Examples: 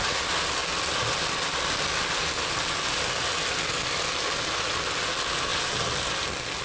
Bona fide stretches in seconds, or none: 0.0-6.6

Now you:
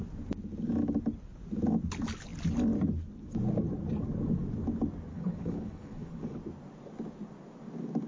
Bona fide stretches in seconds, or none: 0.0-5.1; 6.4-8.1

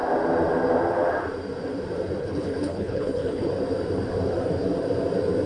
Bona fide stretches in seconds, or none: 0.0-2.2; 3.5-5.5

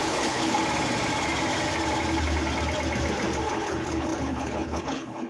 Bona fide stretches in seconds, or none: 0.6-3.5

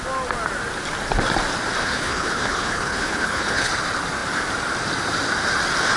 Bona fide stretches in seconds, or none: 0.0-1.8; 3.7-6.0

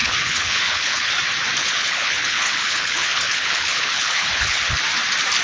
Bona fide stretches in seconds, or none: 1.1-1.6; 4.8-5.4

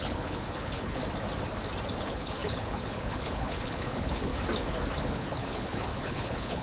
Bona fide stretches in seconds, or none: 1.0-2.0; 4.3-5.0